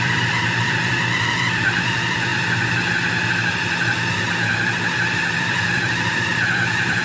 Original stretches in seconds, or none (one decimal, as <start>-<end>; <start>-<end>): 2.3-5.2